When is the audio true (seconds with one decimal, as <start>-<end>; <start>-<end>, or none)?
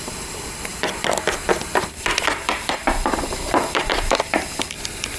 none